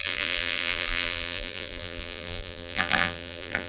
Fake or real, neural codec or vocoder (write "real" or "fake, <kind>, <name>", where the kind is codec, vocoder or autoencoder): fake, vocoder, BigVGAN v2